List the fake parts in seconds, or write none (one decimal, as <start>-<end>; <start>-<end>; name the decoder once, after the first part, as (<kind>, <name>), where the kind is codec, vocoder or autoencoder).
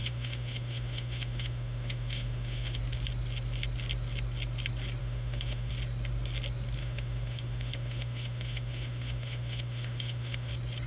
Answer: 0.0-2.8 (autoencoder, DAC-VAE); 5.0-5.7; 6.8-10.5